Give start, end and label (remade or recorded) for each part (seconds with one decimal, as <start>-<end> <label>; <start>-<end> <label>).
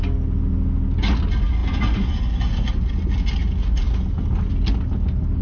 0.0-5.4 recorded